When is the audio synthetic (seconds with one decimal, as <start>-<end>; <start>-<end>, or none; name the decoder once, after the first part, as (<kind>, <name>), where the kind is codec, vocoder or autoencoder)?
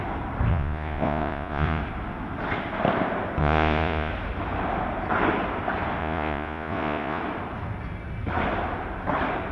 0.5-1.8 (vocoder, Vocos); 3.4-4.1; 6.0-7.2